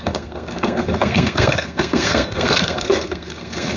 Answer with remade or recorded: remade